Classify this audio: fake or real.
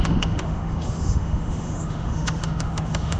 fake